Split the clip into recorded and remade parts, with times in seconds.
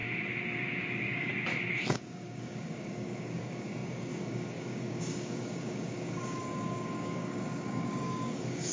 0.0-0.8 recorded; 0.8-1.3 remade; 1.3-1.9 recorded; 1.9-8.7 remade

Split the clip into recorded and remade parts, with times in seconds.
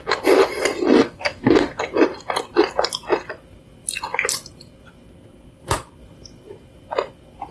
0.0-1.0 recorded; 1.0-1.8 remade; 1.8-7.5 recorded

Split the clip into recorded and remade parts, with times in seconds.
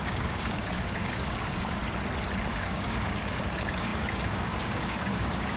0.0-1.8 remade; 1.8-2.5 recorded; 2.5-5.6 remade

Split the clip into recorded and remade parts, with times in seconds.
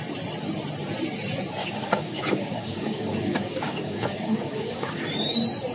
0.0-1.6 recorded; 1.6-5.0 remade; 5.0-5.7 recorded